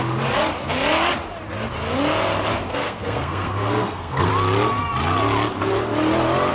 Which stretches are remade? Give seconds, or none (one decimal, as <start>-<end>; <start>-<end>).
2.7-4.3